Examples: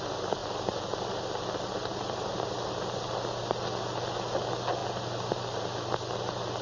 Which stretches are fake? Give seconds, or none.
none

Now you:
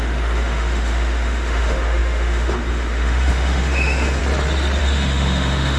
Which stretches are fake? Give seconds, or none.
0.0-4.2 (autoencoder, DAC-VAE); 4.8-5.8

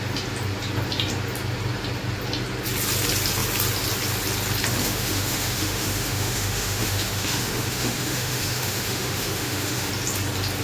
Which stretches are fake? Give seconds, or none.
4.8-9.9 (autoencoder, DAC-VAE)

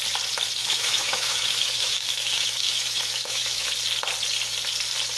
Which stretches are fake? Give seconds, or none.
0.6-3.7 (autoencoder, DAC-VAE)

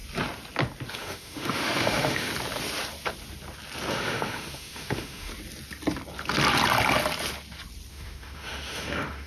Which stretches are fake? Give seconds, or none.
0.9-2.3 (autoencoder, DAC-VAE); 3.9-5.3; 7.9-9.3

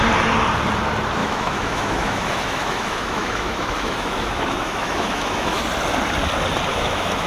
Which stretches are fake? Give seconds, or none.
1.2-5.6 (autoencoder, DAC-VAE); 6.7-7.3

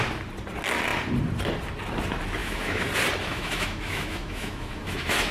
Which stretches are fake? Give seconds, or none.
2.4-2.9 (autoencoder, DAC-VAE); 3.3-5.3

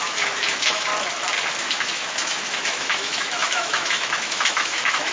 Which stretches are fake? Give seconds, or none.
0.0-0.9 (autoencoder, DAC-VAE); 1.6-5.1